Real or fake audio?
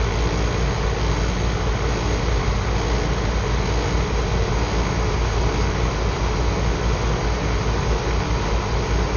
real